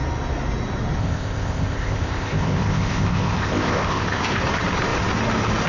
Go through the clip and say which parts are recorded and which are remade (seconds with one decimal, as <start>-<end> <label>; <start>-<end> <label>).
0.0-1.0 recorded; 1.0-4.4 remade; 4.4-5.7 recorded